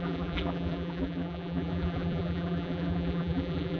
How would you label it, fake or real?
fake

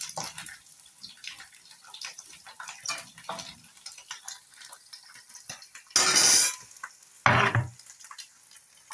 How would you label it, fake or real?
real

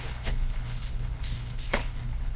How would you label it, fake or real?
fake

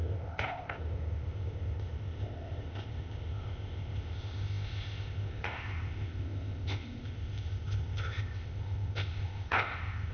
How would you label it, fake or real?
fake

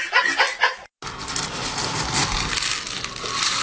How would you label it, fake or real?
real